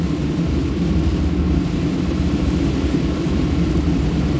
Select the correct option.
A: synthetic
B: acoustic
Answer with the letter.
B